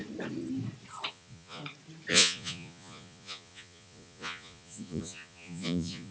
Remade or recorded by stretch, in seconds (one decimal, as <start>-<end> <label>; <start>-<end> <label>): 0.0-1.1 recorded; 1.1-1.6 remade; 1.6-2.1 recorded; 2.1-6.1 remade